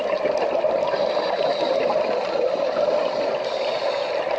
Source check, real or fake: real